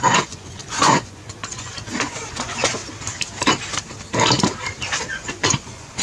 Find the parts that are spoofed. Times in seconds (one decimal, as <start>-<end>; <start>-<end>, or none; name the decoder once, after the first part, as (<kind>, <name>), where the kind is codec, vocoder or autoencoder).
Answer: 0.0-2.8 (vocoder, Vocos); 5.1-6.0